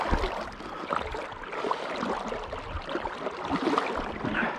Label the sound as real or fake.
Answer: real